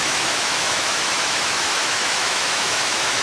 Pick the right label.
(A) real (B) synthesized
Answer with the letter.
B